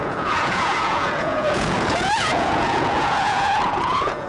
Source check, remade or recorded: remade